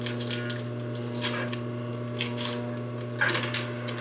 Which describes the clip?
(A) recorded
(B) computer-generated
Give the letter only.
A